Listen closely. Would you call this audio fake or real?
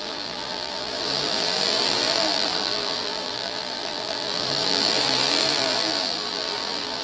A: fake